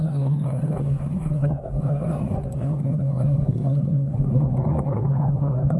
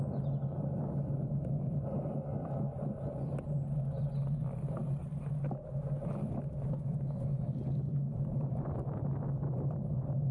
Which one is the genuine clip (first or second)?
second